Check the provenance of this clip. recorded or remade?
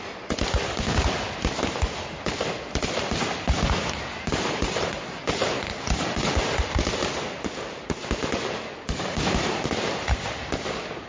recorded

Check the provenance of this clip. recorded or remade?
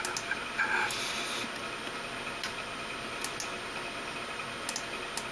recorded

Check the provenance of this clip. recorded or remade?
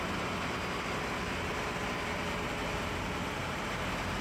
recorded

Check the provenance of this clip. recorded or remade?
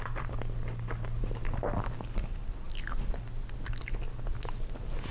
recorded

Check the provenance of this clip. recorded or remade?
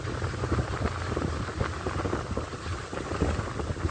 recorded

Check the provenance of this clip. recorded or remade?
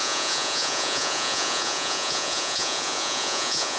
remade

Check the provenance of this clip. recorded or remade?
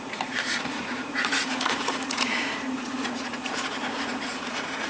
remade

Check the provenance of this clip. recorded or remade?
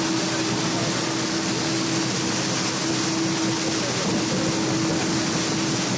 recorded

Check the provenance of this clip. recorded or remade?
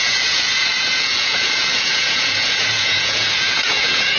remade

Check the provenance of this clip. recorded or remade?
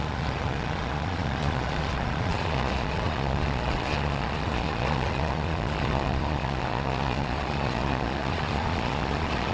remade